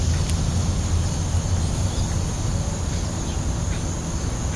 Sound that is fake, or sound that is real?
real